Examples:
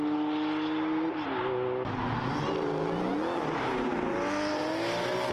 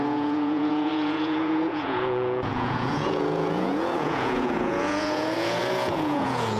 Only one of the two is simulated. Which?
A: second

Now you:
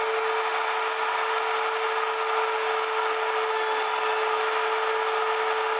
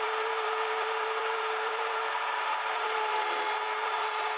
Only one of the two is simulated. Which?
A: second